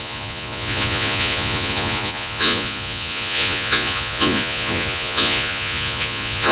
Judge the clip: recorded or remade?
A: remade